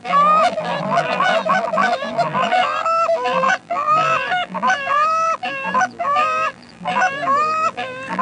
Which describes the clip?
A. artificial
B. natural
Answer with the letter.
A